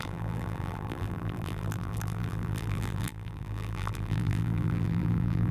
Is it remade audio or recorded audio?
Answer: remade